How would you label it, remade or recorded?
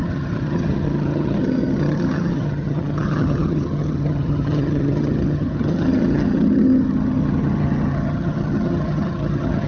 remade